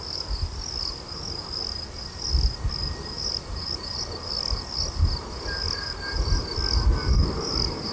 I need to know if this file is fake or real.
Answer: real